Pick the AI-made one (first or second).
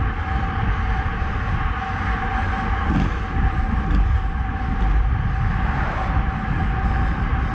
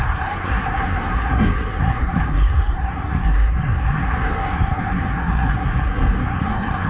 second